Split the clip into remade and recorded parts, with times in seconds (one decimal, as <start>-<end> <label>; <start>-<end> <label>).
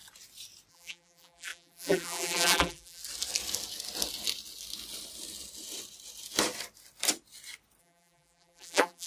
0.0-0.7 recorded; 0.7-3.0 remade; 3.0-7.8 recorded; 7.8-9.1 remade